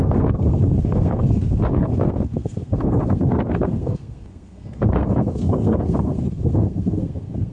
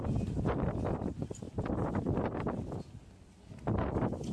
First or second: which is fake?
first